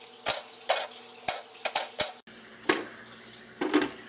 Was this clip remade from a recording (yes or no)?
no